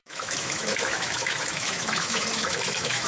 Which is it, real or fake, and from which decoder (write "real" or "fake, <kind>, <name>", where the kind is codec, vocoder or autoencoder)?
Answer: fake, autoencoder, DAC-VAE